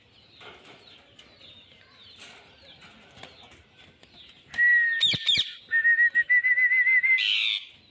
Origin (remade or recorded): recorded